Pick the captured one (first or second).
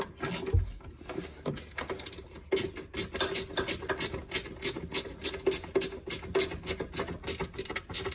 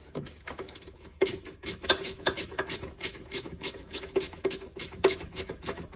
first